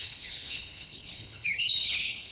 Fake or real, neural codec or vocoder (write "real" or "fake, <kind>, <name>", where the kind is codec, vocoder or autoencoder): fake, codec, HILCodec